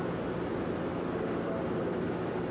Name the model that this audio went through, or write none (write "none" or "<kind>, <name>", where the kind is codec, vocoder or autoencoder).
none